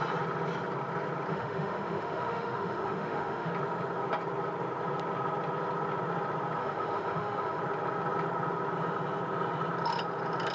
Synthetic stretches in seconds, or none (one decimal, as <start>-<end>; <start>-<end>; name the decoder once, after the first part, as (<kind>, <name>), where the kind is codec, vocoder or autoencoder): 1.3-3.5 (autoencoder, DAC-VAE); 6.6-7.6